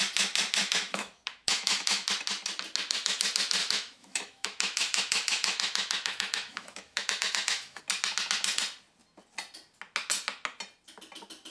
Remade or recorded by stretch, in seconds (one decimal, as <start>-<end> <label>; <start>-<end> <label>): 0.0-0.6 recorded; 0.6-2.1 remade; 2.1-3.6 recorded; 3.6-7.8 remade; 7.8-11.5 recorded